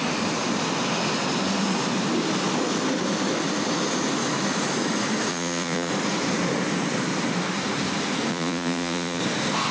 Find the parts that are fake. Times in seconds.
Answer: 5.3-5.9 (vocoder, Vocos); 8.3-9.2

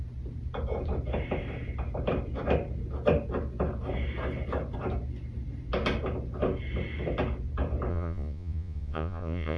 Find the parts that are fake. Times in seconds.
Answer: 7.9-9.6 (vocoder, Vocos)

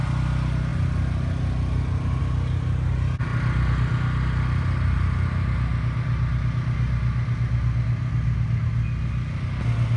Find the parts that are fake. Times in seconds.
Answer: none

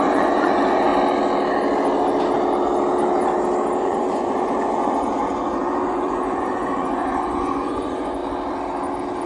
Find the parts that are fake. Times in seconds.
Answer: 0.0-0.9 (vocoder, Vocos); 3.8-8.2

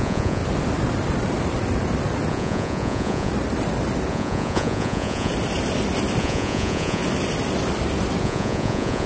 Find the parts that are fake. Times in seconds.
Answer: 0.0-0.4 (vocoder, Vocos); 2.3-3.3; 4.1-5.3; 6.2-7.0; 8.2-9.1